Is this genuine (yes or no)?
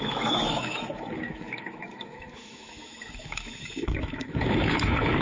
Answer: no